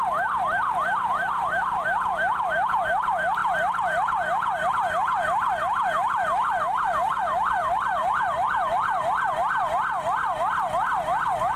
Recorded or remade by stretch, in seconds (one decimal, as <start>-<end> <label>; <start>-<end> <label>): 0.0-7.6 recorded; 7.6-9.3 remade; 9.3-11.6 recorded